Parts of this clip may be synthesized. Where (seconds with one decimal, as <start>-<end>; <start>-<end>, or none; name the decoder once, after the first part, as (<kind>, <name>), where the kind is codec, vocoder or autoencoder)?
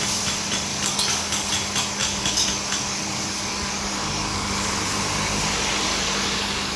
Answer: 0.7-1.5 (codec, DAC); 2.0-4.7; 5.9-6.8